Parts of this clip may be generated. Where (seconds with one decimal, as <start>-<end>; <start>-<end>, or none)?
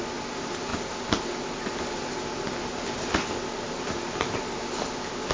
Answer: none